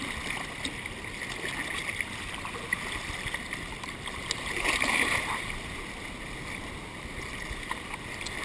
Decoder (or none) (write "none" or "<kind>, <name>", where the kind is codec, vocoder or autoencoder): none